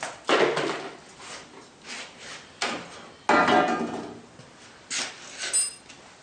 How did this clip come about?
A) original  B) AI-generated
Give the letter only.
A